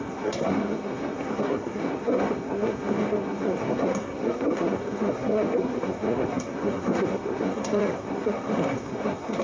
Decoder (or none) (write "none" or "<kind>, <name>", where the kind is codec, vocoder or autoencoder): codec, SNAC